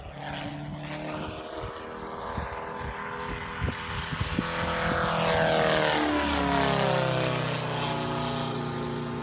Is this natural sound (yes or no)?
yes